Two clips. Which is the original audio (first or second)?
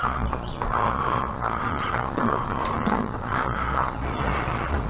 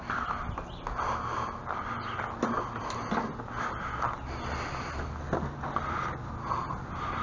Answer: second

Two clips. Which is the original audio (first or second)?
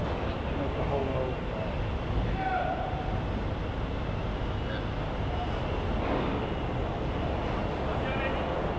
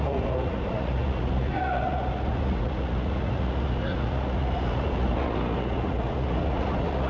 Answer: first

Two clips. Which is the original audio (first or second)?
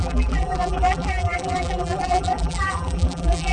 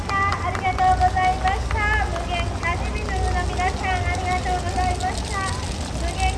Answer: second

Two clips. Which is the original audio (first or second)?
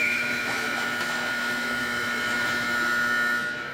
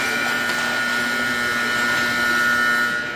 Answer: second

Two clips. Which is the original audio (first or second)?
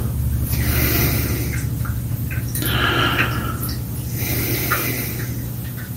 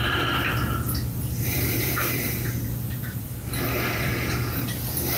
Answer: first